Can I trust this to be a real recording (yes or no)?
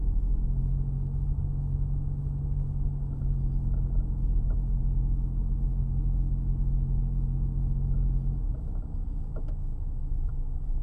yes